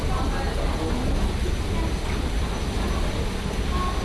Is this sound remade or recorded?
recorded